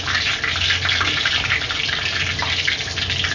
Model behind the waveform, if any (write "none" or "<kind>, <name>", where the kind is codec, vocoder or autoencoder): none